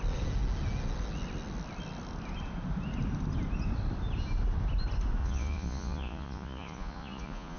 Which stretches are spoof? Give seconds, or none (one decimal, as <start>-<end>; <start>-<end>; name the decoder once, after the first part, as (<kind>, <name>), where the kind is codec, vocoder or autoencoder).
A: 5.2-7.6 (vocoder, Vocos)